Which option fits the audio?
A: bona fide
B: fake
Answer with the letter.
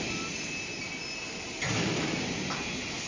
A